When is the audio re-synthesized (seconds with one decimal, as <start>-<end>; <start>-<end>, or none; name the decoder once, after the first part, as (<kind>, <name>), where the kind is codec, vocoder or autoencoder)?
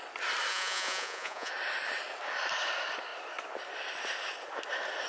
0.5-1.5 (vocoder, Vocos)